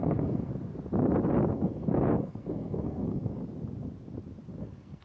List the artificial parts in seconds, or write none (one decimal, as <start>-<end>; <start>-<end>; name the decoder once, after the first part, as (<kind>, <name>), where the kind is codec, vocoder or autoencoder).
0.0-0.5 (codec, SNAC); 1.5-3.4; 4.6-5.0